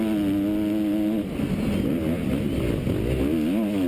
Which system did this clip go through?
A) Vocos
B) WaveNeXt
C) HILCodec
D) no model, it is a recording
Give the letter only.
D